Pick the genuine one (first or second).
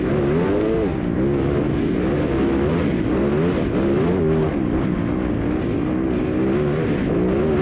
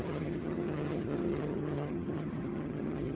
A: first